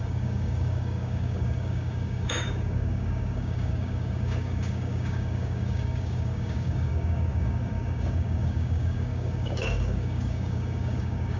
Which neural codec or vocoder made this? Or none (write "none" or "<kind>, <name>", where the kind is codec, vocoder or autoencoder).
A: codec, DAC